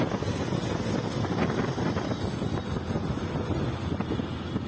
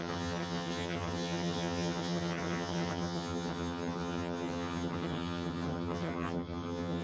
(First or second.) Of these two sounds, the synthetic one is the second